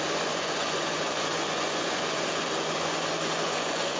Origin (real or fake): fake